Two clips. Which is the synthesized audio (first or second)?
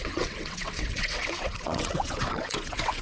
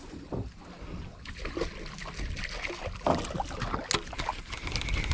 first